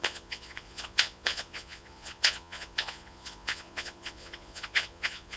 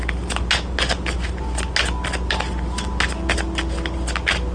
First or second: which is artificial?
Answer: first